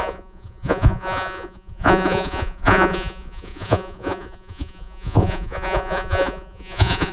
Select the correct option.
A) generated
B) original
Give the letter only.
A